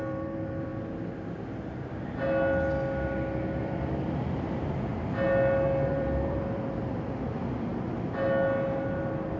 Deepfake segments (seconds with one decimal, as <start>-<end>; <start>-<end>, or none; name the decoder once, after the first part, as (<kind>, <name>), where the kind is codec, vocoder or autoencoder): 0.0-0.7 (vocoder, BigVGAN v2); 3.6-4.9; 5.9-7.7; 9.0-9.4